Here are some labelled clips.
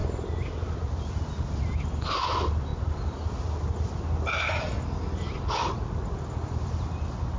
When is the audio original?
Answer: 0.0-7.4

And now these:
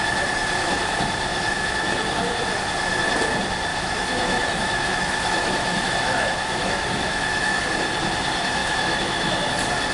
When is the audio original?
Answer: 0.0-1.3; 2.2-3.7; 7.6-8.6; 9.5-9.9

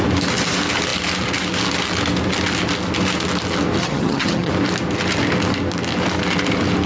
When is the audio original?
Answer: 0.0-3.8; 4.5-6.9

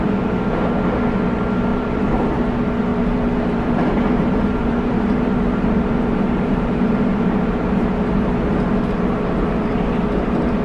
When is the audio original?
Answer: 0.0-1.7; 2.3-2.9; 7.4-10.6

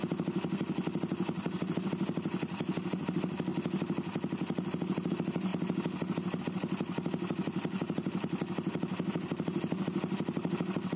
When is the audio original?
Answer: 0.0-11.0

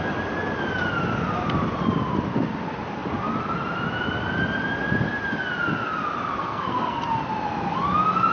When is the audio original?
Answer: 0.0-6.4; 7.0-8.3